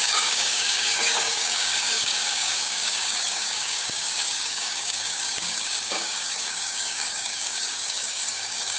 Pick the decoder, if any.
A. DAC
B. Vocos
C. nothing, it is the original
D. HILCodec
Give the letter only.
A